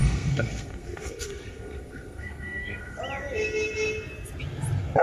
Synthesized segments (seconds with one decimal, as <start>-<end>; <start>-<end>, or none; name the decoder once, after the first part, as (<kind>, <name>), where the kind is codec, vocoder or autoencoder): 0.0-3.0 (codec, SNAC)